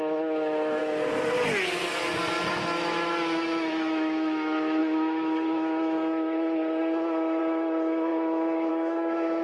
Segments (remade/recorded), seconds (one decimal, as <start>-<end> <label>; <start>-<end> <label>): 0.0-0.8 remade; 0.8-2.5 recorded; 2.5-9.4 remade